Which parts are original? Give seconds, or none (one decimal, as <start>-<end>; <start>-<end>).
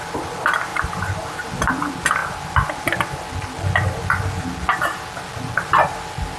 0.0-6.4